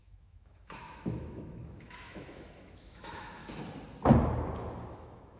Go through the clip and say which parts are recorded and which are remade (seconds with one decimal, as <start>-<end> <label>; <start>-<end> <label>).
0.0-3.4 remade; 3.4-4.9 recorded; 4.9-5.4 remade